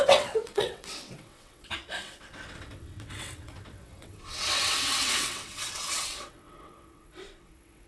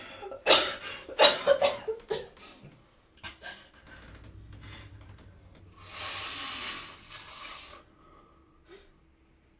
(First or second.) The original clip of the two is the second